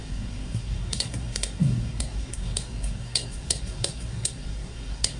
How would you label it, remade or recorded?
remade